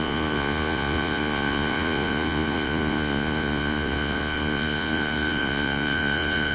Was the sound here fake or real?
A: fake